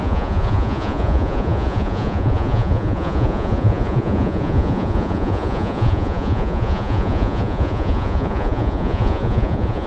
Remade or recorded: remade